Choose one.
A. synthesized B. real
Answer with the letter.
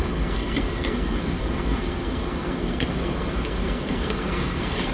A